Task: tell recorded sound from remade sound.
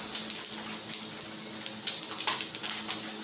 recorded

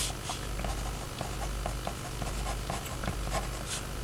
recorded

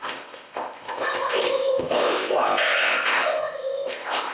remade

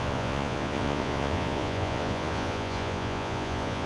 remade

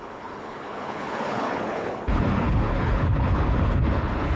remade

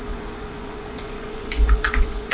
remade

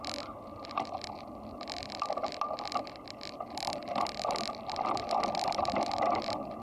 recorded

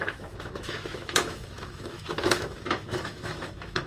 remade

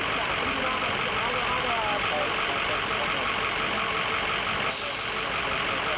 recorded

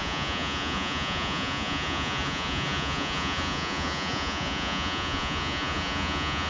remade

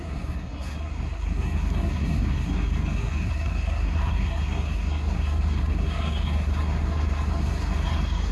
remade